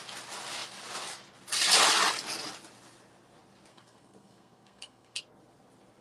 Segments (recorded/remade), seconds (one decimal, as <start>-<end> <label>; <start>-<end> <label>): 0.0-3.7 recorded; 3.7-5.2 remade; 5.2-6.0 recorded